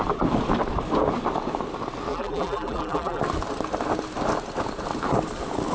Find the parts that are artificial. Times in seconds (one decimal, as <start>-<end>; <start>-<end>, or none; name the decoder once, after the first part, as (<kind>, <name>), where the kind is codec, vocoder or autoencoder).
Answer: 2.1-3.2 (vocoder, BigVGAN v2)